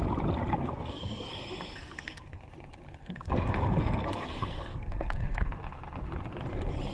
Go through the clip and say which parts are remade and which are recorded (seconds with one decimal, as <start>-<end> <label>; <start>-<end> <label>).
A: 0.0-0.5 recorded; 0.5-1.2 remade; 1.2-1.8 recorded; 1.8-2.4 remade; 2.4-3.0 recorded; 3.0-5.5 remade; 5.5-6.9 recorded